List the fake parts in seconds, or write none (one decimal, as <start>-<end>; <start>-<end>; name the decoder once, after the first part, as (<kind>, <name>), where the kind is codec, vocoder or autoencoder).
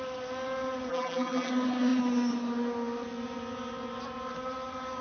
0.9-1.5 (vocoder, BigVGAN v2)